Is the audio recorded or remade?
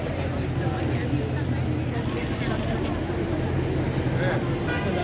recorded